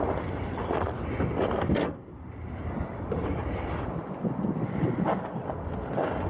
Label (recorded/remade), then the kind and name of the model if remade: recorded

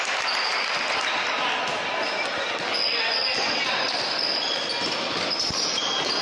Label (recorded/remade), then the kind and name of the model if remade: remade, vocoder, BigVGAN v2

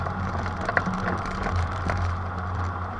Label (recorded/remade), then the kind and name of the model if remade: remade, vocoder, BigVGAN v2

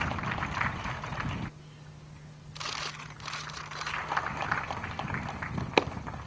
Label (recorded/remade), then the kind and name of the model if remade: recorded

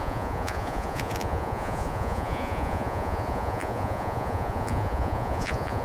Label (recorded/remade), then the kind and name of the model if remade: remade, vocoder, Vocos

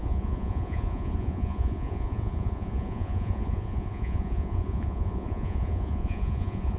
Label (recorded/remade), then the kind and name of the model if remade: remade, vocoder, Vocos